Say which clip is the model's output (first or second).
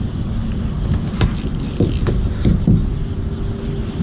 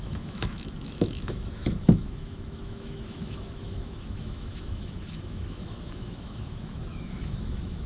second